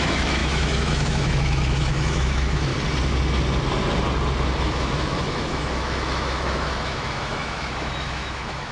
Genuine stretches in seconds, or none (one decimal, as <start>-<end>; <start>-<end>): 2.7-4.6